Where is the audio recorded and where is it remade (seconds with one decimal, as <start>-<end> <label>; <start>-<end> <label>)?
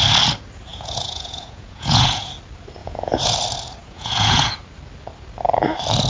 0.0-0.7 recorded; 0.7-2.3 remade; 2.3-2.8 recorded; 2.8-3.3 remade; 3.3-3.8 recorded; 3.8-4.6 remade; 4.6-6.1 recorded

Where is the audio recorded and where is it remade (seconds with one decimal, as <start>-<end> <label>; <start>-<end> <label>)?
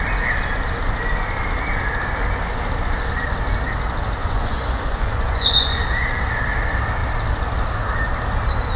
0.0-4.2 recorded; 4.2-5.8 remade; 5.8-8.8 recorded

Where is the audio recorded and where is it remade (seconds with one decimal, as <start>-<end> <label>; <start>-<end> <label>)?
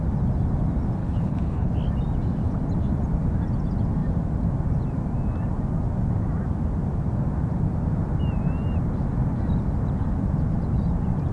0.0-1.0 recorded; 1.0-1.7 remade; 1.7-11.3 recorded